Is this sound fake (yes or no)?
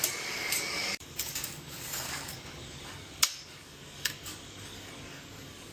yes